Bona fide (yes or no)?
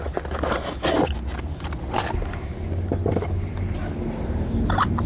yes